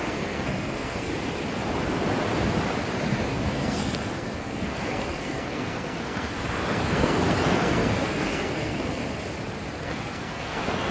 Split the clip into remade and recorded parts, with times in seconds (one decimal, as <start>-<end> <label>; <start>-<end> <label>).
0.0-1.1 remade; 1.1-3.3 recorded; 3.3-9.0 remade; 9.0-9.8 recorded; 9.8-10.9 remade

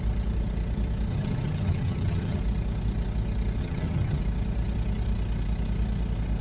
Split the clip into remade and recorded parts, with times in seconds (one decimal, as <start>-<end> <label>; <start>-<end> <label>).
0.0-1.1 recorded; 1.1-2.4 remade; 2.4-3.6 recorded; 3.6-4.2 remade; 4.2-6.4 recorded

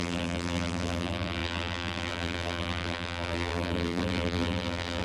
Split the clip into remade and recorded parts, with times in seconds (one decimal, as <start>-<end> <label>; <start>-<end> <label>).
0.0-5.0 remade